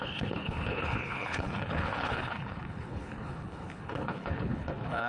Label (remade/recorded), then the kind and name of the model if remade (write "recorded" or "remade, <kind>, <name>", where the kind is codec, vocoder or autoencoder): remade, codec, HILCodec